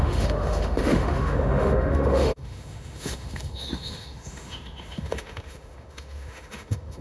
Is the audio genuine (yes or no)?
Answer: no